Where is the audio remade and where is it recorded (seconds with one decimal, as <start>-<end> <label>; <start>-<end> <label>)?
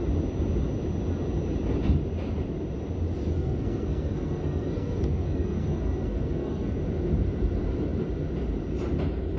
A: 0.0-3.2 recorded; 3.2-6.8 remade; 6.8-9.4 recorded